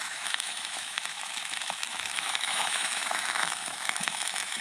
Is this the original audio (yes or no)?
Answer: no